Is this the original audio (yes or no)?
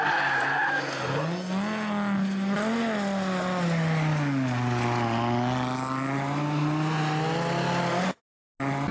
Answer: yes